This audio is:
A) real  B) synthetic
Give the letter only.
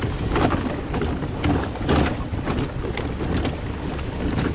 A